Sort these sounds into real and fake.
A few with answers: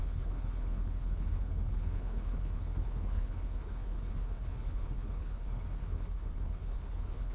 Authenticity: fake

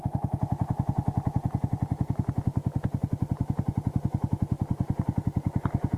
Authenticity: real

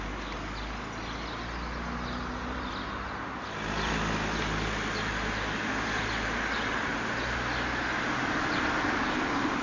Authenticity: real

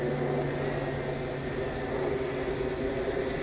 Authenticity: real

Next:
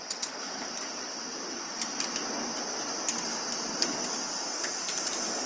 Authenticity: real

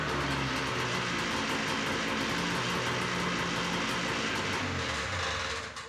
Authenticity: real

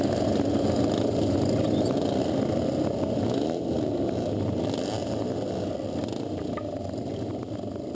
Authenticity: real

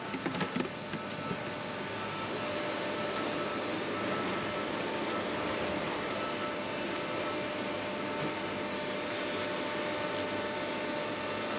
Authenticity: real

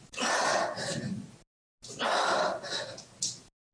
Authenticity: real